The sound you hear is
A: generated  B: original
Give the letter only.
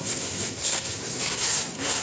A